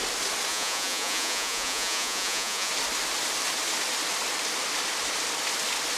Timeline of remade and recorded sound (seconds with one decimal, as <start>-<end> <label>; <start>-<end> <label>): 0.0-0.5 recorded; 0.5-2.7 remade; 2.7-6.0 recorded